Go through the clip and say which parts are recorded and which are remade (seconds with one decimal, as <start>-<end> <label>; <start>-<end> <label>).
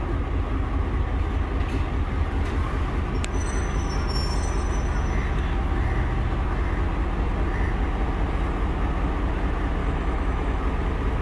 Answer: 0.0-9.8 recorded; 9.8-10.6 remade; 10.6-11.2 recorded